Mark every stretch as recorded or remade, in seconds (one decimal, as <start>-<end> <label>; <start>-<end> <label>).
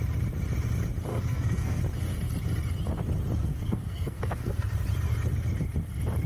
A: 0.0-1.1 recorded; 1.1-1.8 remade; 1.8-3.4 recorded; 3.4-4.6 remade; 4.6-6.3 recorded